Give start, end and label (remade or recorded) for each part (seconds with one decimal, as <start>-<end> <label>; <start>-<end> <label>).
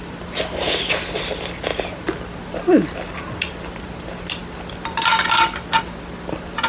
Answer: 0.0-6.7 recorded